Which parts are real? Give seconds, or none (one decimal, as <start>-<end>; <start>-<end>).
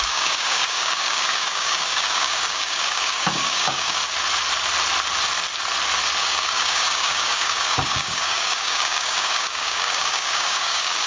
4.0-6.2